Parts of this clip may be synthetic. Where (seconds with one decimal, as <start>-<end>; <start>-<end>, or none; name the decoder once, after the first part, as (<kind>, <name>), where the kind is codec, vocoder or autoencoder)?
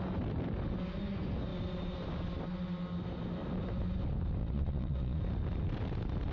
4.4-5.2 (vocoder, Vocos)